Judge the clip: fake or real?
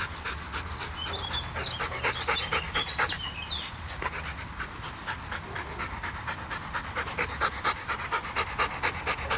real